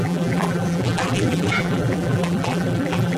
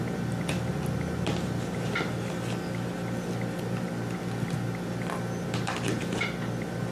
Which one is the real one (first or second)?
second